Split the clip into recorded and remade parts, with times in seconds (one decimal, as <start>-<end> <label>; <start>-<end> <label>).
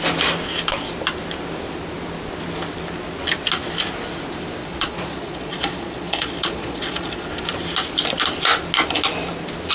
0.0-4.6 recorded; 4.6-7.3 remade; 7.3-9.7 recorded